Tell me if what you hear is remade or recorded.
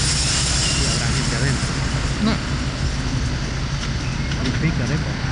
recorded